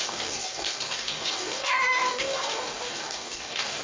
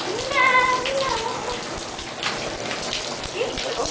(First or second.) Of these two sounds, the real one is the second